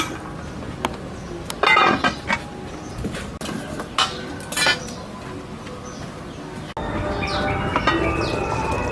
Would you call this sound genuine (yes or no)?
yes